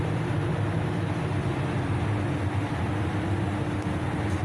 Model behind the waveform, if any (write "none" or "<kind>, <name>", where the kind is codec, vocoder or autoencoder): none